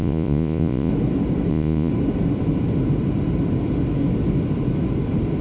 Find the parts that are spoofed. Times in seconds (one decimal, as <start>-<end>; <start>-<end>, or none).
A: 0.0-0.9; 1.5-1.9